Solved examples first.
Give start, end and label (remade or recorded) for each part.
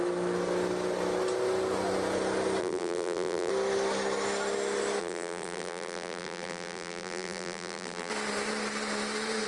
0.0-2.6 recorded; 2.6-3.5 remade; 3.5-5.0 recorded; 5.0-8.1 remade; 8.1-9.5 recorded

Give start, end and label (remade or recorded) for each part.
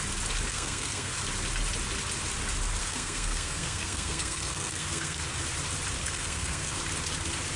0.0-0.5 recorded; 0.5-1.1 remade; 1.1-2.8 recorded; 2.8-5.2 remade; 5.2-6.0 recorded; 6.0-6.8 remade; 6.8-7.6 recorded